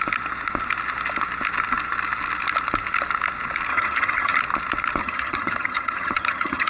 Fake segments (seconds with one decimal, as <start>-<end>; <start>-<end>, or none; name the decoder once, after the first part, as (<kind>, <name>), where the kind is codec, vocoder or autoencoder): 3.7-4.4 (vocoder, HiFi-GAN); 5.0-6.7